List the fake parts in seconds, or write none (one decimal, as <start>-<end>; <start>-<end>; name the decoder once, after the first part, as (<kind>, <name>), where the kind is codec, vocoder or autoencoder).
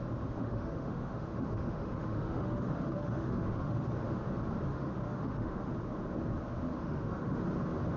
0.4-3.9 (autoencoder, DAC-VAE); 4.7-5.7; 6.7-7.4